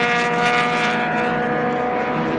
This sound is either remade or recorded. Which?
recorded